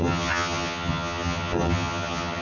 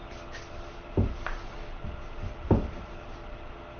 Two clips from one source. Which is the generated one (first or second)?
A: first